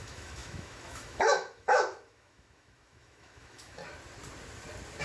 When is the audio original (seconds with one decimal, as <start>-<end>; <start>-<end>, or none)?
3.8-5.0